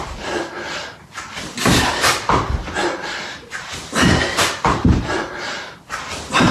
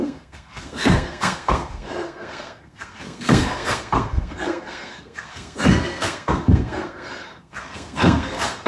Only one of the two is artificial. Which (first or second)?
second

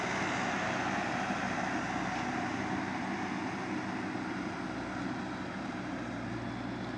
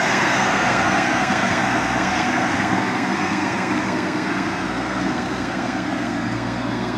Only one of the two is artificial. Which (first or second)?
second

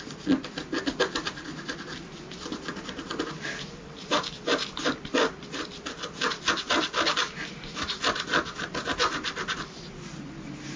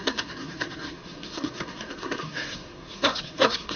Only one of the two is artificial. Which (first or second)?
second